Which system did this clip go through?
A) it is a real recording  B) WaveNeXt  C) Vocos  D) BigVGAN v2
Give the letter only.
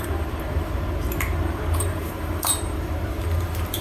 D